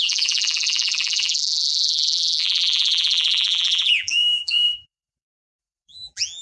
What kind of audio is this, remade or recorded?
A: remade